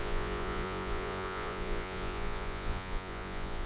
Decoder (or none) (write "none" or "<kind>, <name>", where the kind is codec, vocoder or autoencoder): vocoder, Vocos